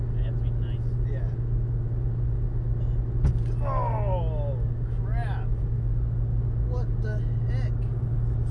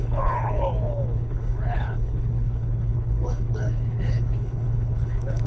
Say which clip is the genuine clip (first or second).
first